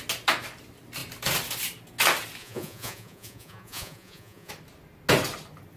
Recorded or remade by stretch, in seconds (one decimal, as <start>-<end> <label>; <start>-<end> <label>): 0.0-2.4 recorded; 2.4-4.5 remade; 4.5-5.8 recorded